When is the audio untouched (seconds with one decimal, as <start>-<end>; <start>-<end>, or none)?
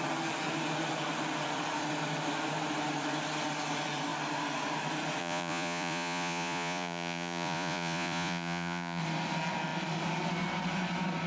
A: 0.0-5.2; 9.0-11.3